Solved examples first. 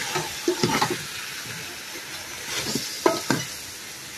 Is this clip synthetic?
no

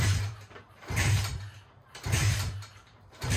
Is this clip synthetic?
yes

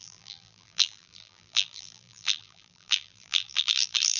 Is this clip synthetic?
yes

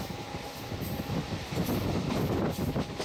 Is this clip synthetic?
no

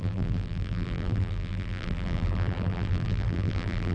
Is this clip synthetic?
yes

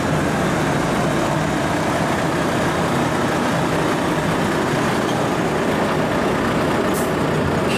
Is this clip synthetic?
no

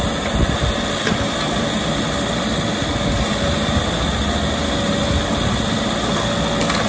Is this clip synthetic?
no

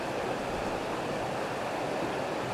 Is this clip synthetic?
no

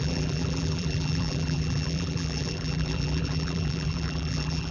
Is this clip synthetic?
yes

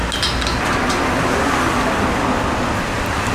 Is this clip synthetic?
no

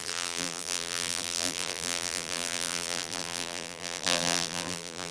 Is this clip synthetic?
yes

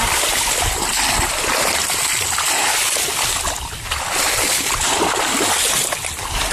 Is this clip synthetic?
no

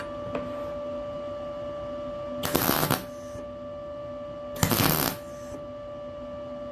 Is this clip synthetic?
no